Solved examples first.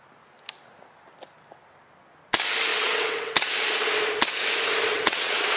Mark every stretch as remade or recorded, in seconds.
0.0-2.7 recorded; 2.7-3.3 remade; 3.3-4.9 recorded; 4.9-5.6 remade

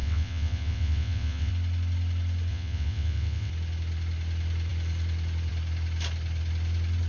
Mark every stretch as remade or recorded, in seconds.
0.0-1.5 remade; 1.5-2.5 recorded; 2.5-3.5 remade; 3.5-7.1 recorded

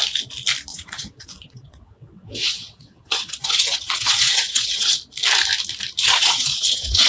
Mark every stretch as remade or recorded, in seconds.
0.0-0.7 recorded; 0.7-5.0 remade; 5.0-6.0 recorded; 6.0-7.1 remade

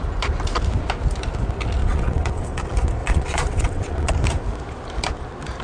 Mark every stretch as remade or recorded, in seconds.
0.0-1.8 recorded; 1.8-2.6 remade; 2.6-3.0 recorded; 3.0-4.1 remade; 4.1-5.6 recorded